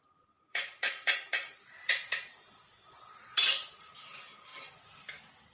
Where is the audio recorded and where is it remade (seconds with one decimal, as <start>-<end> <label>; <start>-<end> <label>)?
0.0-0.5 recorded; 0.5-3.8 remade; 3.8-5.5 recorded